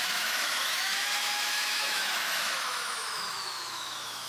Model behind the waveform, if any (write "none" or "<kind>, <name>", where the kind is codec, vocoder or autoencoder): autoencoder, DAC-VAE